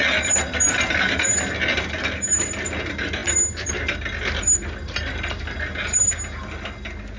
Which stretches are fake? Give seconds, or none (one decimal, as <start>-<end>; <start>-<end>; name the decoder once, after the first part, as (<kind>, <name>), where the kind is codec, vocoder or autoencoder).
none